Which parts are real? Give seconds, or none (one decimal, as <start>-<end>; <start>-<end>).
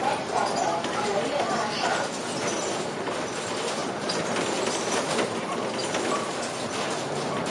0.0-3.8; 4.7-7.5